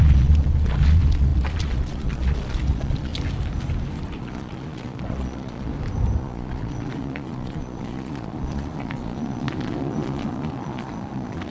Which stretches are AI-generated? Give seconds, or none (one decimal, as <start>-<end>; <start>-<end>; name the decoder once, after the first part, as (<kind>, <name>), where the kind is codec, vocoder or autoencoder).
0.0-3.1 (vocoder, Vocos); 4.2-5.7; 6.2-11.5